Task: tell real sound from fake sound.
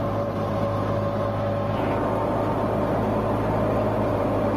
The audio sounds fake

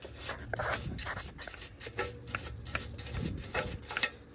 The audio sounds real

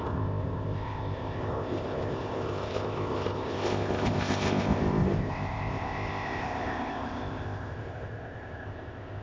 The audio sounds fake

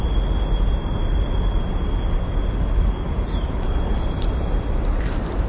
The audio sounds real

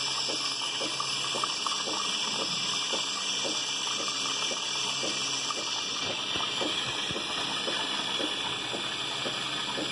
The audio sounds real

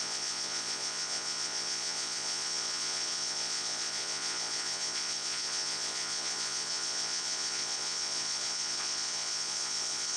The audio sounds fake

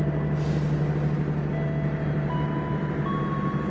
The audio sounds real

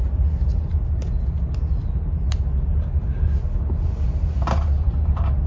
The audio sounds real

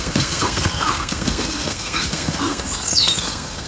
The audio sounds fake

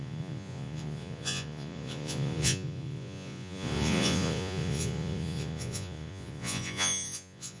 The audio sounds fake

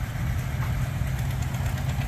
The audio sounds real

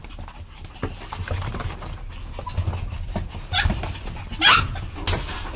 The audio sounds real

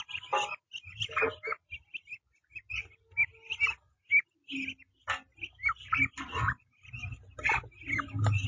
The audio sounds real